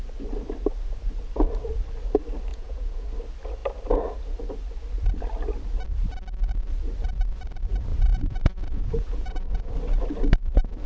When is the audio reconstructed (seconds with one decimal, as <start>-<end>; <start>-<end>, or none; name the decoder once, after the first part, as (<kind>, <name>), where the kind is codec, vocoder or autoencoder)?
2.5-3.1 (vocoder, Vocos); 7.9-9.7